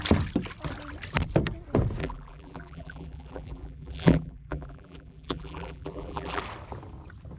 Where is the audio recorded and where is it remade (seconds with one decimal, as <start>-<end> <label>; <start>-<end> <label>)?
0.0-2.0 recorded; 2.0-6.4 remade; 6.4-7.4 recorded